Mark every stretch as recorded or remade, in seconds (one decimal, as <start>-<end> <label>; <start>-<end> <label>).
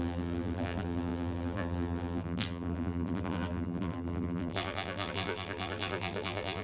0.0-6.6 remade